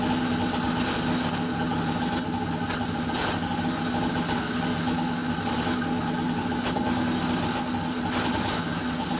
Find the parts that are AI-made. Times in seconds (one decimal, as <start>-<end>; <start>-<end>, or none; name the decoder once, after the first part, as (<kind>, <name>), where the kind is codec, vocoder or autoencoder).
none